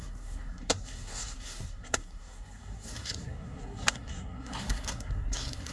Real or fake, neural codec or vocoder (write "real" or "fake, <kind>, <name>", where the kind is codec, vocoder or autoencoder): fake, codec, SNAC